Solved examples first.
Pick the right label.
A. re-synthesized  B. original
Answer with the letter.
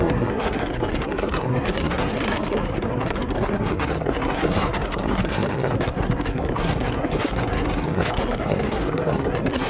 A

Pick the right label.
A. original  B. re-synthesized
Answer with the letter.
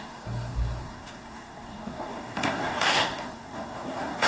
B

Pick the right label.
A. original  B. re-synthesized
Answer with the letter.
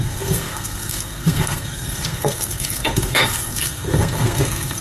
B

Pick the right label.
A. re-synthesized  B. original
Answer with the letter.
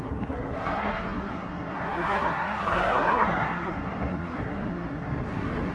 A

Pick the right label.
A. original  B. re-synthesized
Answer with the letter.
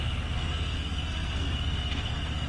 B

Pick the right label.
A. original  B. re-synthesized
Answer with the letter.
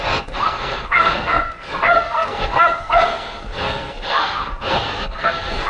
B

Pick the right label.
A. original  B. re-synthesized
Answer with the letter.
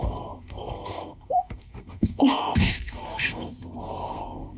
B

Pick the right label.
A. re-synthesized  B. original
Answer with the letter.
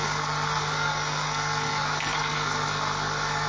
A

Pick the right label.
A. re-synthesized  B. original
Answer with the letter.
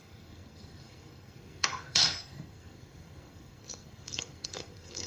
A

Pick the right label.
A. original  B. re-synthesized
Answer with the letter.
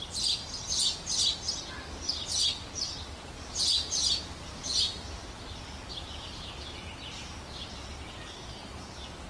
A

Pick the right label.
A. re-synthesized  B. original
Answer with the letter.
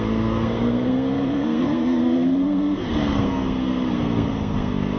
A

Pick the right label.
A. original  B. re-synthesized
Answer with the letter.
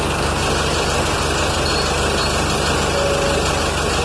A